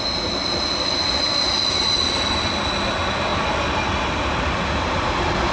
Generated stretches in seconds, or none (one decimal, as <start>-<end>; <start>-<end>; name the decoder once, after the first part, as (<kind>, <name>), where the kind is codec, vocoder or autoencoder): none

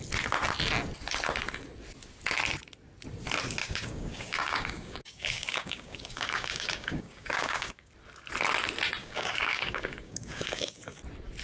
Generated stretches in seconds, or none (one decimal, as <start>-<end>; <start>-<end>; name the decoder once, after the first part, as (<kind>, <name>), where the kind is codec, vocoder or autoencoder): 3.6-7.9 (codec, DAC); 9.0-11.0

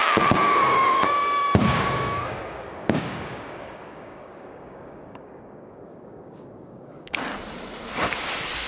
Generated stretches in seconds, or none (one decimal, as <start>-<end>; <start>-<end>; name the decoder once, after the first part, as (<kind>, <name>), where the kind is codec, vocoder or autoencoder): 0.0-7.3 (codec, DAC)

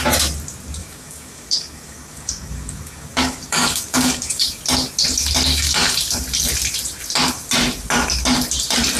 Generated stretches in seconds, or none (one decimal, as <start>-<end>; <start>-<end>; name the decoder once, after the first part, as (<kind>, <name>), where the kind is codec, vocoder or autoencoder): 0.8-4.6 (codec, DAC); 5.5-6.0

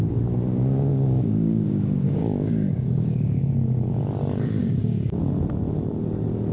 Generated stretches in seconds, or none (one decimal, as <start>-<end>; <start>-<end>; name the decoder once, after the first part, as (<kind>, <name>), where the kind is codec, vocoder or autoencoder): 0.9-4.1 (codec, DAC); 4.6-5.2

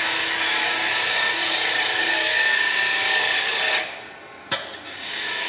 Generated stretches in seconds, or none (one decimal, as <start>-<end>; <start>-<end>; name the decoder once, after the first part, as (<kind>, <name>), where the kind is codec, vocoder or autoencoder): 0.0-1.4 (codec, DAC); 2.0-3.5; 4.9-5.5